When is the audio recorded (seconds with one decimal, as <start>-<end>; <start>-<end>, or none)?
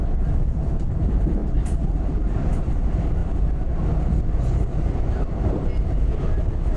3.2-5.1